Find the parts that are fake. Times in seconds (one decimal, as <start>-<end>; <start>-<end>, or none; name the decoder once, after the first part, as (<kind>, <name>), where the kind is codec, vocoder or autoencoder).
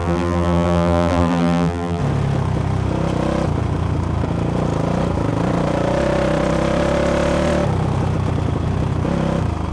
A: 0.0-2.0 (vocoder, BigVGAN v2)